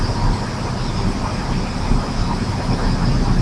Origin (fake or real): real